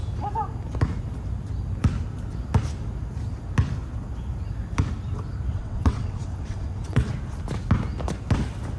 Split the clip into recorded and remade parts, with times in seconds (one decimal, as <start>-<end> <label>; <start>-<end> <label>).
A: 0.0-5.5 recorded; 5.5-7.1 remade; 7.1-8.8 recorded

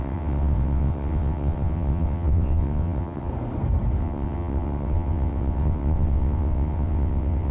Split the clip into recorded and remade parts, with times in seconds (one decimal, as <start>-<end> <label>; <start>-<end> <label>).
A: 0.0-3.3 remade; 3.3-4.0 recorded; 4.0-7.5 remade